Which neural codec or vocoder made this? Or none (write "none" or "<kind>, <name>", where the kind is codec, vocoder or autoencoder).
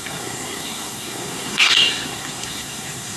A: codec, SNAC